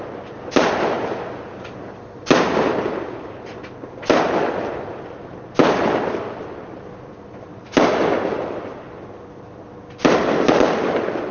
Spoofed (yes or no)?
no